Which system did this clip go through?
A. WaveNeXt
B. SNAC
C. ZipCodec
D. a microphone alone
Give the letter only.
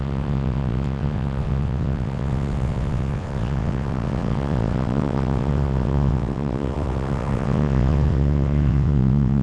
A